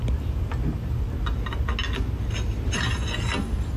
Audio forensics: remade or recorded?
recorded